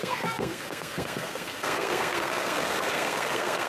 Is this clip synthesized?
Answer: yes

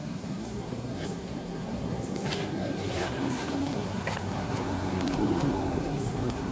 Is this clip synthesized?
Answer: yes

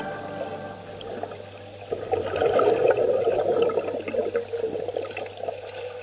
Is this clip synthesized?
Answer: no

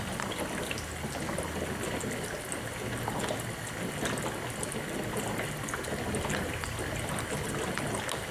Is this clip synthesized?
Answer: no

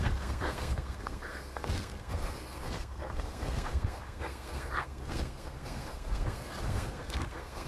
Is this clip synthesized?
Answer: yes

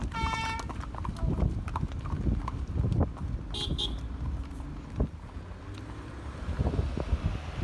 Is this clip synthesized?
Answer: no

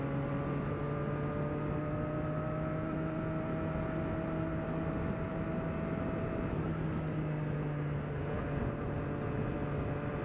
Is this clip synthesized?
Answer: no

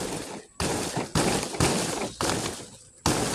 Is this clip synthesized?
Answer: no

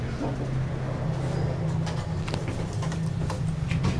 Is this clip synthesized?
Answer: no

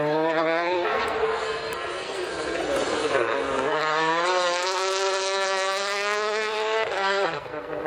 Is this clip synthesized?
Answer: yes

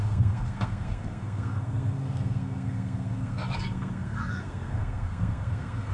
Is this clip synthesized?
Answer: yes